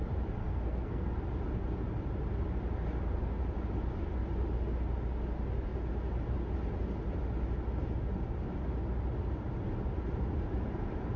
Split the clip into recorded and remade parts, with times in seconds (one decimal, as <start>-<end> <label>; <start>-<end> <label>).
0.0-0.4 recorded; 0.4-1.1 remade; 1.1-11.2 recorded